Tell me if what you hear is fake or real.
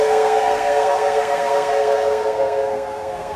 fake